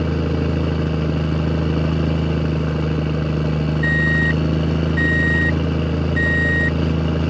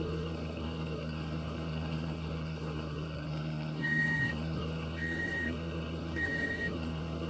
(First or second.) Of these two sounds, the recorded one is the first